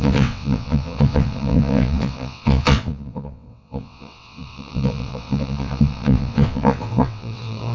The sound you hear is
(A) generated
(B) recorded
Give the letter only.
A